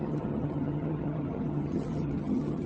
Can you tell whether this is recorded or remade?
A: remade